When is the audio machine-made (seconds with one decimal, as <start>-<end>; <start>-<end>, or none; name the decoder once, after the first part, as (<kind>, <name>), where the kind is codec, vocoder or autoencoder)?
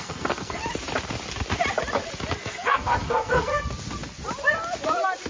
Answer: 0.0-0.6 (codec, SNAC); 2.4-3.5